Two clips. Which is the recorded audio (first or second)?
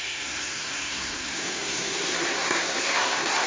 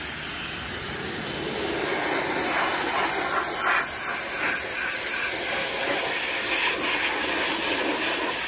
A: second